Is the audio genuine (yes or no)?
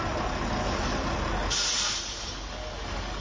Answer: yes